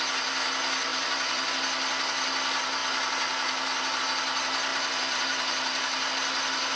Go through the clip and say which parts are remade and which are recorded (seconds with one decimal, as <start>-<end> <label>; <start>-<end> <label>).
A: 0.0-0.9 recorded; 0.9-1.5 remade; 1.5-4.7 recorded; 4.7-6.1 remade; 6.1-6.8 recorded